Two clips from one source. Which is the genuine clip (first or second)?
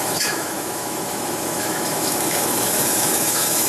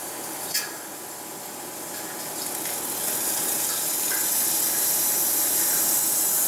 second